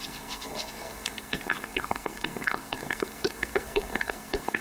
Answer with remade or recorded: remade